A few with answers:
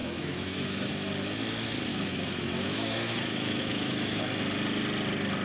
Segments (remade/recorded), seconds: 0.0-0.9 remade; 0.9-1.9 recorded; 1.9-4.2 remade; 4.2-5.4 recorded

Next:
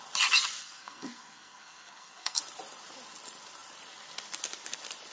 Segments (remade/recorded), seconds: 0.0-0.6 recorded; 0.6-2.4 remade; 2.4-5.1 recorded

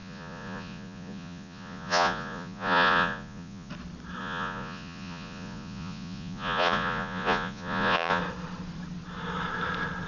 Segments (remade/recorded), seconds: 0.0-3.7 remade; 3.7-4.2 recorded; 4.2-8.2 remade; 8.2-10.1 recorded

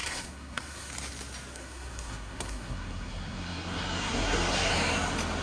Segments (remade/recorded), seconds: 0.0-0.9 remade; 0.9-1.5 recorded; 1.5-4.7 remade; 4.7-5.4 recorded

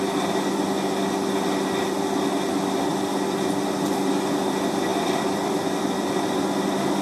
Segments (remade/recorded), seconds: 0.0-4.9 recorded; 4.9-6.4 remade; 6.4-7.0 recorded

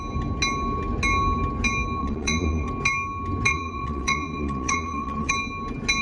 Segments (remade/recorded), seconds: 0.0-2.0 recorded; 2.0-2.7 remade; 2.7-3.5 recorded; 3.5-5.3 remade; 5.3-6.0 recorded

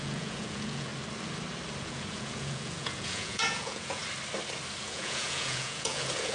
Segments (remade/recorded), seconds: 0.0-0.9 remade; 0.9-1.8 recorded; 1.8-4.0 remade; 4.0-4.8 recorded; 4.8-6.3 remade

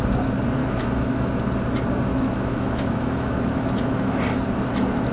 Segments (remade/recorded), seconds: 0.0-0.6 recorded; 0.6-1.3 remade; 1.3-2.1 recorded; 2.1-4.2 remade; 4.2-5.1 recorded